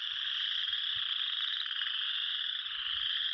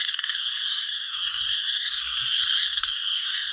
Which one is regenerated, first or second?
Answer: second